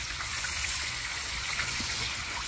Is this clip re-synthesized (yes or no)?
yes